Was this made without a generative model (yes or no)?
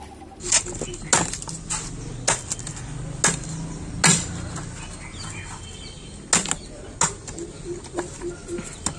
yes